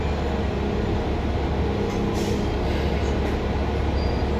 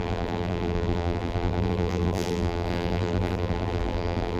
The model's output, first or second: second